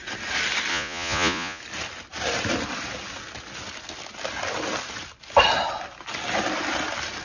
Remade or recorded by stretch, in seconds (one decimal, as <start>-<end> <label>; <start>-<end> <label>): 0.0-0.7 recorded; 0.7-1.6 remade; 1.6-7.2 recorded